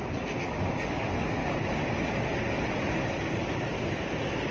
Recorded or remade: recorded